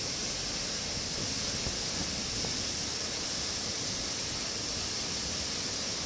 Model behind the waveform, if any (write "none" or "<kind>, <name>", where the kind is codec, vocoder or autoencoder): none